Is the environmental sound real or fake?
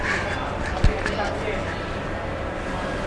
real